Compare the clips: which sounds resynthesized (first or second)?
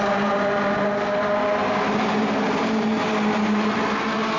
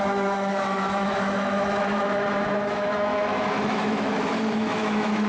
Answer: second